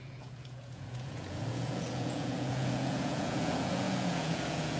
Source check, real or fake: fake